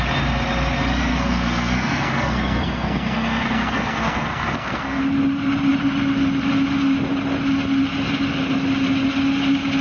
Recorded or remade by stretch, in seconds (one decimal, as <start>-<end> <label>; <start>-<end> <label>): 0.0-1.1 recorded; 1.1-5.0 remade; 5.0-9.8 recorded